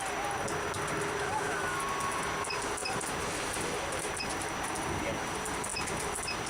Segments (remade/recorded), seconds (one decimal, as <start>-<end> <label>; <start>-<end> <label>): 0.0-6.5 recorded